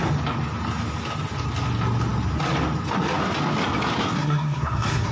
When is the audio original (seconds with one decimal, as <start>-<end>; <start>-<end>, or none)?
0.0-4.0